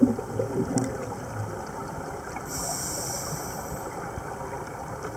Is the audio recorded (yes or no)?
yes